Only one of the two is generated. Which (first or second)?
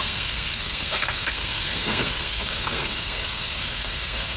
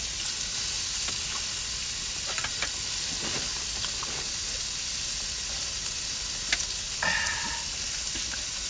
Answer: first